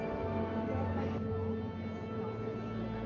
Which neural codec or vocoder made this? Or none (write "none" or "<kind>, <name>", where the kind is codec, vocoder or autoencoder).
none